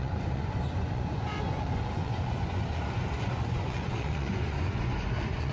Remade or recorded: remade